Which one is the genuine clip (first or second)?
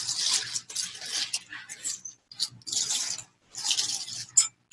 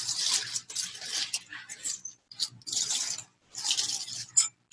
first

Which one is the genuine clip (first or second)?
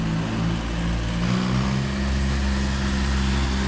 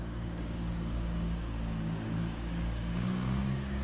first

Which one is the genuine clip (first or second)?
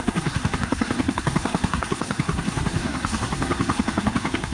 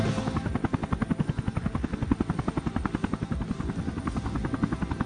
second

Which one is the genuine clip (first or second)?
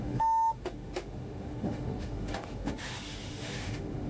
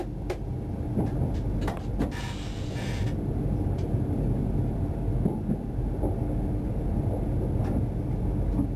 second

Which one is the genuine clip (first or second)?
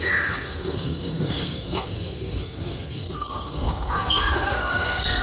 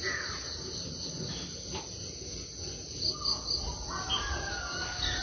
second